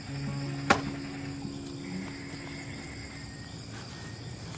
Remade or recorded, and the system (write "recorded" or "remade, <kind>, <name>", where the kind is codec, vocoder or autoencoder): recorded